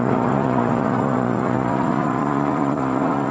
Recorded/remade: remade